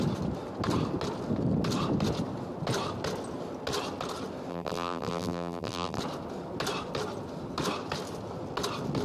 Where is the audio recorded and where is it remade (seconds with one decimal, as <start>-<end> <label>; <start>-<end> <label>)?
0.0-4.5 recorded; 4.5-6.0 remade; 6.0-9.0 recorded